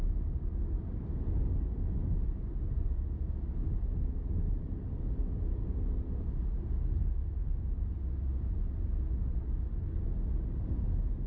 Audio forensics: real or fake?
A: real